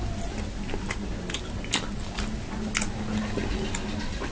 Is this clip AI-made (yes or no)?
no